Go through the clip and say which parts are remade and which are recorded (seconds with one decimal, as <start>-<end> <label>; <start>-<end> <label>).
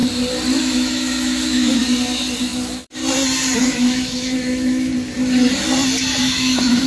0.0-0.6 recorded; 0.6-1.8 remade; 1.8-2.4 recorded; 2.4-3.0 remade; 3.0-3.6 recorded; 3.6-4.9 remade; 4.9-6.2 recorded; 6.2-6.9 remade